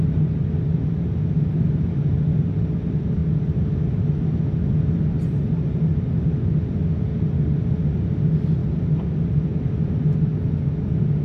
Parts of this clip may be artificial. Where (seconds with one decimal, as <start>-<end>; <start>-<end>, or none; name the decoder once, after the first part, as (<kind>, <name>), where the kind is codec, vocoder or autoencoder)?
none